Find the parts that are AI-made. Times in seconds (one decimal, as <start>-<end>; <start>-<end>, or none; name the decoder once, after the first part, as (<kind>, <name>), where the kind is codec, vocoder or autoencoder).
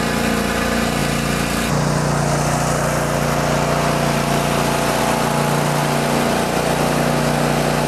none